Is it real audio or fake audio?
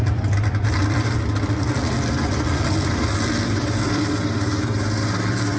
fake